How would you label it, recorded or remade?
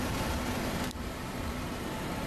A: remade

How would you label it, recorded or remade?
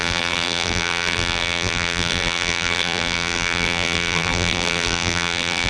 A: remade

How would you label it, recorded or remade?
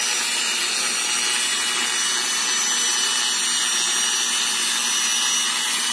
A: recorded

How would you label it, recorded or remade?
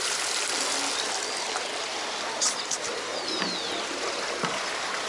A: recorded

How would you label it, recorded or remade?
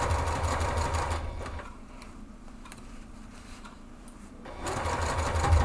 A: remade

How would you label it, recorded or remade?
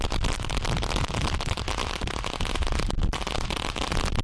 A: remade